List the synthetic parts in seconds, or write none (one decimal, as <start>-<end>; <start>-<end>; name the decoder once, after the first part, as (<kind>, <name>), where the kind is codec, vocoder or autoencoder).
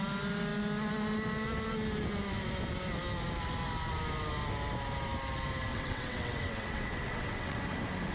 5.7-7.6 (vocoder, WaveNeXt)